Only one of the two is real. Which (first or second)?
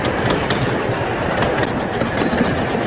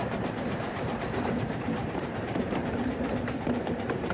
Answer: first